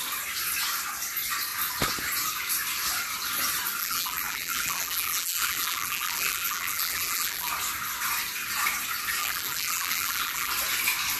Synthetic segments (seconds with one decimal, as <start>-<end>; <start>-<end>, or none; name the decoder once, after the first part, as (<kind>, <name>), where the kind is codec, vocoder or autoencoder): 3.8-7.5 (vocoder, BigVGAN v2); 9.2-10.5